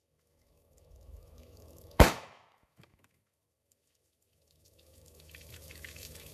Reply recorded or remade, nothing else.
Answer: remade